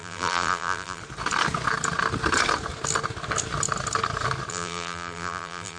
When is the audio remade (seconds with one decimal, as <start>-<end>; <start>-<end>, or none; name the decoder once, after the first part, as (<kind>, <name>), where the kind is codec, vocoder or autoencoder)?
0.0-1.0 (vocoder, BigVGAN v2); 4.5-5.8